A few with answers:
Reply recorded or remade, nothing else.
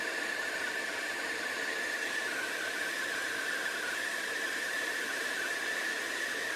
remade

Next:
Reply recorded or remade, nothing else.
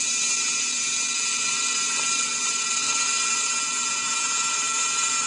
remade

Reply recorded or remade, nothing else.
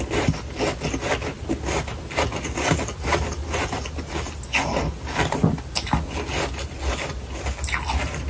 recorded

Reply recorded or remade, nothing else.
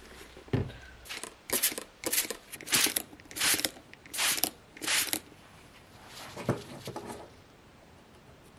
remade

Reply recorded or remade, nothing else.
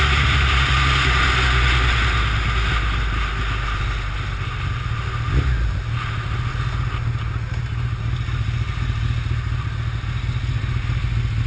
recorded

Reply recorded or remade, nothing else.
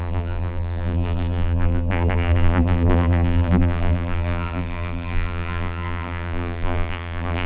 remade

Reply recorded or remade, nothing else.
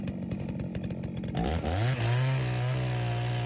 recorded